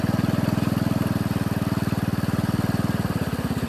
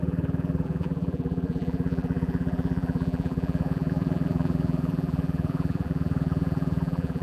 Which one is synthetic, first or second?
second